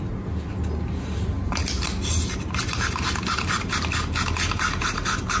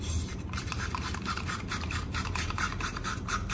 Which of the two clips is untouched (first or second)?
first